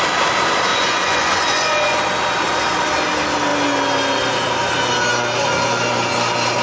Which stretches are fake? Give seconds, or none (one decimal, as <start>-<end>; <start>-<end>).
0.7-2.0

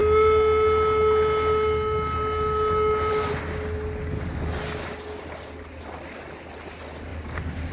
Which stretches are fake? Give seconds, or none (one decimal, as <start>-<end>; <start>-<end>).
none

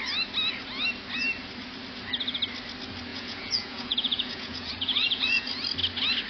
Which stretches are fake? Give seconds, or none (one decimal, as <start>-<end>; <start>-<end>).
3.1-5.5

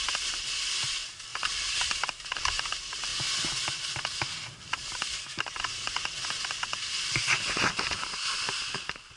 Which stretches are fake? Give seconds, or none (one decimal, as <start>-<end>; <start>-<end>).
1.3-1.8

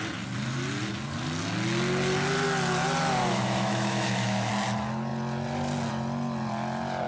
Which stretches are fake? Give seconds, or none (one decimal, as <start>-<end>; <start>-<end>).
3.2-4.5